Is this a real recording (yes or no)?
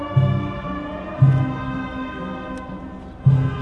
yes